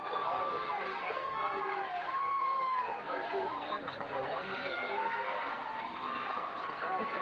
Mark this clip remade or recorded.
remade